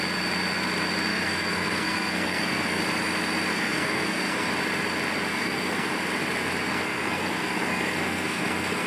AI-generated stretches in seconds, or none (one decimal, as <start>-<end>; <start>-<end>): 1.1-2.8; 3.5-4.5; 5.3-5.9; 6.7-8.9